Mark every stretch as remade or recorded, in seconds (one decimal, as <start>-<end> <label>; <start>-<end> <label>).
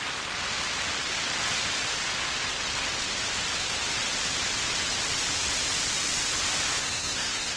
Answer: 0.0-6.8 recorded; 6.8-7.6 remade